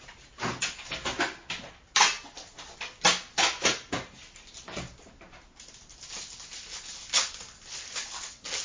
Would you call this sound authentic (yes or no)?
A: yes